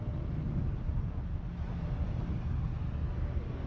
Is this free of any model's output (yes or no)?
yes